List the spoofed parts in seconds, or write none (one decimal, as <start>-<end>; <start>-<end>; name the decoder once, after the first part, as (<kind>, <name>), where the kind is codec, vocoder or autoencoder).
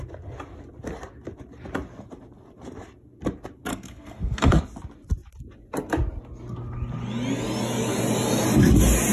3.7-4.6 (codec, SNAC)